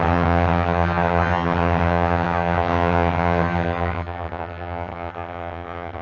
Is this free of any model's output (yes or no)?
no